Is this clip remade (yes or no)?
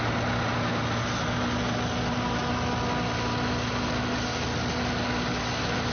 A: no